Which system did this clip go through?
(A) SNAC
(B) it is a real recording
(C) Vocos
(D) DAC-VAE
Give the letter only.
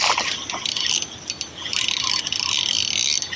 B